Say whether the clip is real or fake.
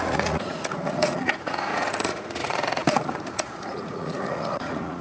fake